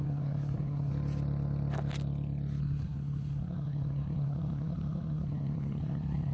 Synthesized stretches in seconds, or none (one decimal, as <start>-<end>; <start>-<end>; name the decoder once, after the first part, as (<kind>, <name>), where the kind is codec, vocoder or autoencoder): 0.0-0.9 (codec, SNAC); 2.6-6.3